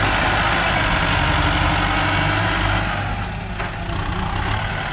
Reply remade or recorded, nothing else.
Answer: recorded